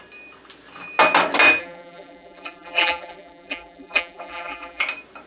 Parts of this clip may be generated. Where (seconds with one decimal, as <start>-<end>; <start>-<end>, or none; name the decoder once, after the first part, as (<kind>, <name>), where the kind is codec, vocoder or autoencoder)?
1.6-4.8 (vocoder, BigVGAN v2)